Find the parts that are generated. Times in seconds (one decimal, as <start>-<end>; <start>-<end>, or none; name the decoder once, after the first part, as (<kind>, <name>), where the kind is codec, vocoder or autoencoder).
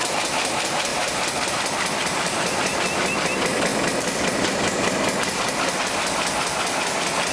2.0-2.7 (vocoder, BigVGAN v2)